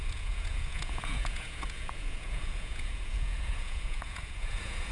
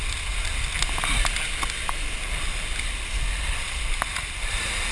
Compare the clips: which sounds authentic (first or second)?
second